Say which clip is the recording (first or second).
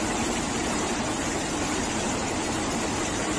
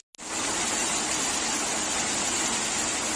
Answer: second